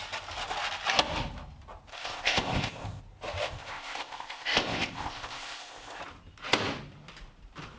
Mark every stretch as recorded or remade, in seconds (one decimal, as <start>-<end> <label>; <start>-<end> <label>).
0.0-1.9 recorded; 1.9-3.0 remade; 3.0-3.4 recorded; 3.4-6.0 remade; 6.0-7.8 recorded